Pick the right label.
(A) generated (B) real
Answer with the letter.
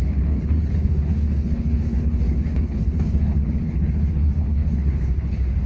A